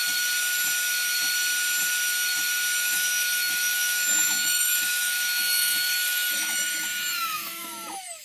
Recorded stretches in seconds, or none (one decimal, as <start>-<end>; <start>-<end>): 0.0-2.8